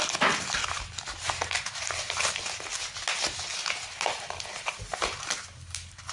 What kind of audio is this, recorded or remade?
recorded